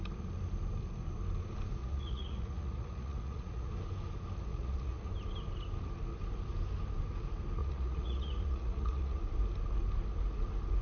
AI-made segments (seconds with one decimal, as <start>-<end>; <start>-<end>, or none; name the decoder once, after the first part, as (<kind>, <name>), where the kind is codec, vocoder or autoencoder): 1.8-3.7 (vocoder, Vocos); 4.5-5.1; 7.6-9.2